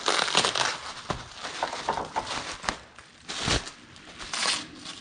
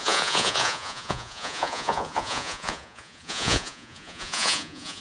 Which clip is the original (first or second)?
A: first